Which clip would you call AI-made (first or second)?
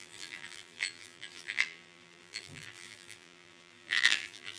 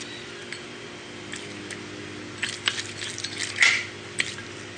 first